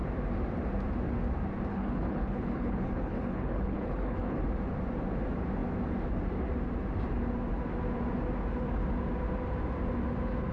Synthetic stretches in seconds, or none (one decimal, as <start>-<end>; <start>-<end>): 1.7-4.4